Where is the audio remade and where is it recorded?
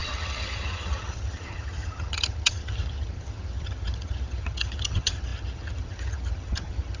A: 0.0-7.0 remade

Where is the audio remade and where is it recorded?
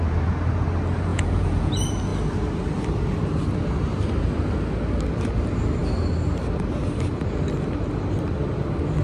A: 0.0-1.1 recorded; 1.1-1.7 remade; 1.7-9.0 recorded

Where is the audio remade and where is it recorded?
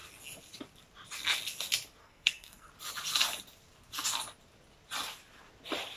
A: 0.0-2.0 recorded; 2.0-2.7 remade; 2.7-6.0 recorded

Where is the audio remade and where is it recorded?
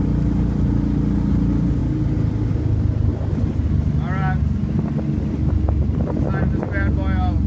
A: 0.0-7.5 recorded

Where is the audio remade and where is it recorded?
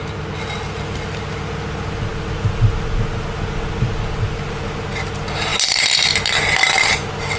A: 0.0-7.4 recorded